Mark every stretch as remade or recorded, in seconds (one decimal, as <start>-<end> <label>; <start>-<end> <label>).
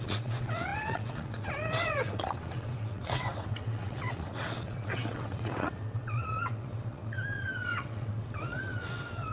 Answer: 0.0-9.3 remade